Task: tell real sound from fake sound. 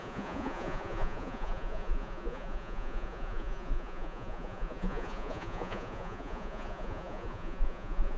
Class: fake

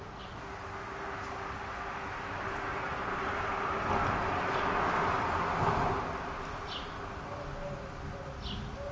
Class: real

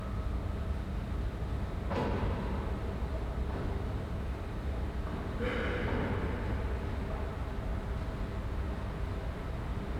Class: real